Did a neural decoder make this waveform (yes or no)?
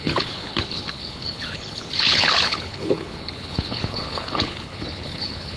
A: yes